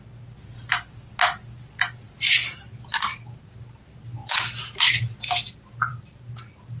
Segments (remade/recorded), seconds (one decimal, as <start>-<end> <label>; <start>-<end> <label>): 0.0-5.9 recorded; 5.9-6.8 remade